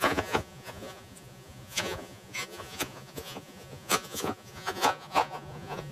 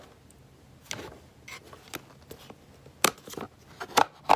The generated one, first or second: first